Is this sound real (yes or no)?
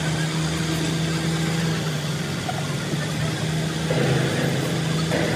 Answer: yes